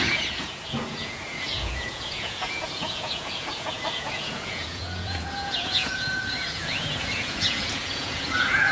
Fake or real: fake